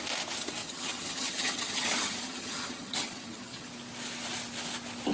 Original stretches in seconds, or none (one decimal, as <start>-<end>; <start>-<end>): 0.0-0.6; 3.7-5.1